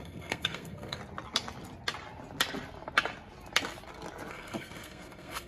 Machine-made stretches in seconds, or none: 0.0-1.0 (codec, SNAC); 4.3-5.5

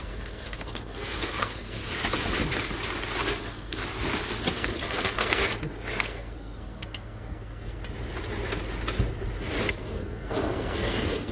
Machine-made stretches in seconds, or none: 0.0-1.8 (codec, SNAC); 3.4-3.8; 4.5-5.4; 6.0-7.8; 9.7-11.3

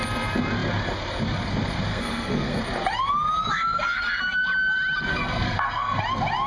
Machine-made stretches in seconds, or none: 1.9-2.6 (codec, SNAC); 5.1-6.0

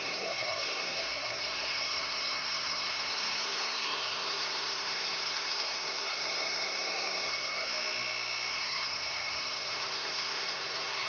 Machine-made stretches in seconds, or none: 0.0-7.7 (codec, SNAC); 8.5-11.1

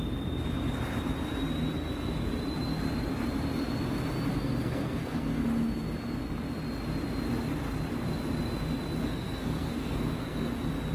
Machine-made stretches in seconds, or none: 4.3-5.4 (codec, SNAC); 9.0-10.5

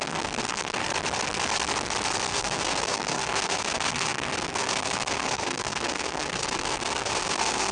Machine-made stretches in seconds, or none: 0.0-0.8 (codec, SNAC); 2.3-7.7

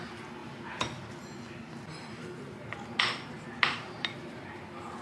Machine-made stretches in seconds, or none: none

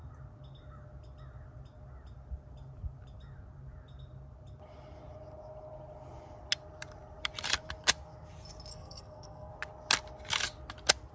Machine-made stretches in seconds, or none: 8.7-9.5 (codec, SNAC)